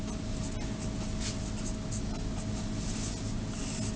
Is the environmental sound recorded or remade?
recorded